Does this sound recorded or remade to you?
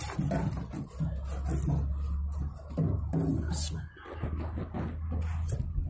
recorded